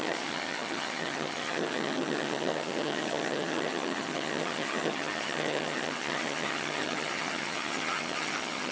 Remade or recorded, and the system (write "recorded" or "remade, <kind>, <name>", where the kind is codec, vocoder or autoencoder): remade, vocoder, HiFi-GAN